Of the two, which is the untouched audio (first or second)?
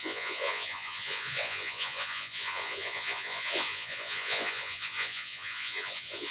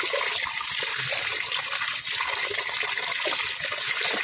second